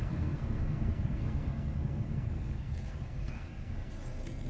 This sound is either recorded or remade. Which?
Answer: remade